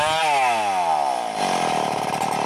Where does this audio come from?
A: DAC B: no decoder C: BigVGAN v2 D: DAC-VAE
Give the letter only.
B